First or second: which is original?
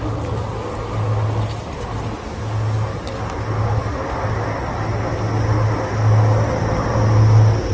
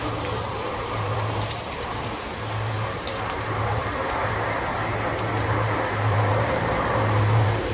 first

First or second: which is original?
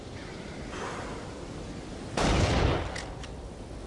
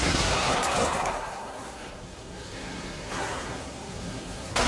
first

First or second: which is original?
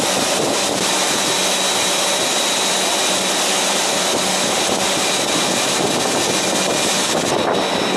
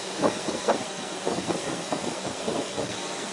first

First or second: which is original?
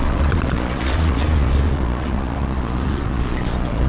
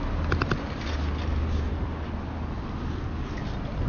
second